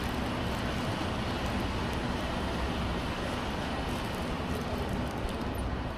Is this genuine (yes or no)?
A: yes